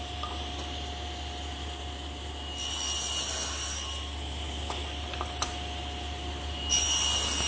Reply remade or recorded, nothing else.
recorded